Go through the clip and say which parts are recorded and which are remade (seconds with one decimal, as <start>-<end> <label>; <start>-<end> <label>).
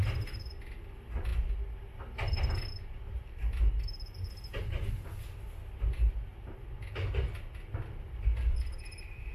0.0-9.3 recorded